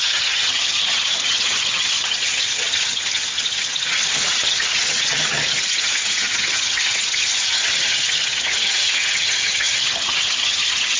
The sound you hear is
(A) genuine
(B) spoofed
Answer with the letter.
B